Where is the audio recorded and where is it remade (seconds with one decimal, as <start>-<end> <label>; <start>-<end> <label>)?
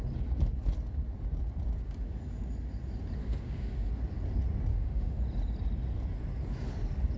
0.0-3.2 recorded; 3.2-3.9 remade; 3.9-4.7 recorded; 4.7-5.2 remade; 5.2-7.2 recorded